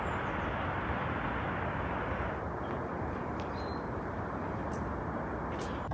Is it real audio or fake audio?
real